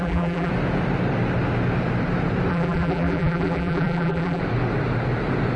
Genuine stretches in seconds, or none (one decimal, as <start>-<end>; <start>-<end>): 0.5-2.5; 4.4-5.6